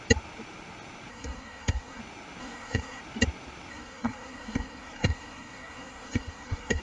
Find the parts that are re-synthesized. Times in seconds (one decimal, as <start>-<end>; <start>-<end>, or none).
1.1-2.0; 2.4-3.0; 3.7-6.8